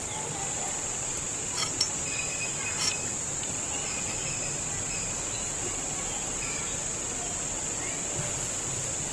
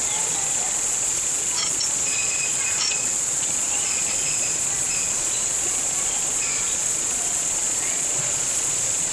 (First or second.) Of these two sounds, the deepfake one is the second